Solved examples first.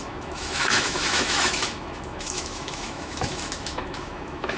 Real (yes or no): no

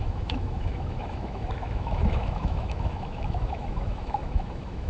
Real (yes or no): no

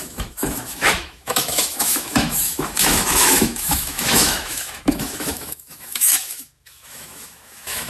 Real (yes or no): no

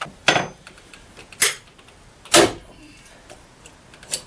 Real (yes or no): yes